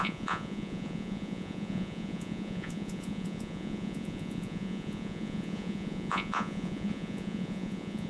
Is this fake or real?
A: fake